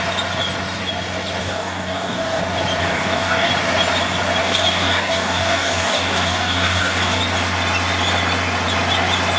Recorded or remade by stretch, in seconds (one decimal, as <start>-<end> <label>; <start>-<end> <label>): 0.0-1.4 recorded; 1.4-2.4 remade; 2.4-2.8 recorded; 2.8-3.5 remade; 3.5-4.4 recorded; 4.4-7.2 remade; 7.2-9.4 recorded